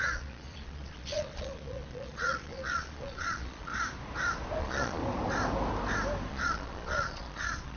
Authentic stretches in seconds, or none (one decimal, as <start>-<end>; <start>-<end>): 3.7-4.6; 5.0-6.3